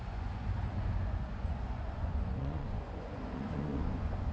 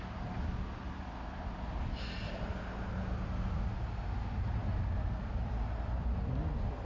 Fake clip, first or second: first